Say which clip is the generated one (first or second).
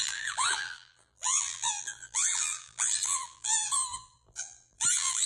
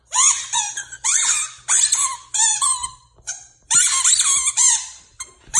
first